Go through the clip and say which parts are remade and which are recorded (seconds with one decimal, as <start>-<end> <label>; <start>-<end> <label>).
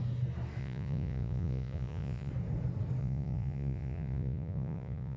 0.0-0.6 recorded; 0.6-2.3 remade; 2.3-3.0 recorded; 3.0-5.2 remade